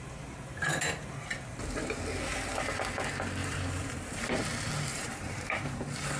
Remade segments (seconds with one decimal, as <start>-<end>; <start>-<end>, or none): 3.4-4.3; 4.9-5.8